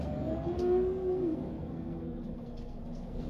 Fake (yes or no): yes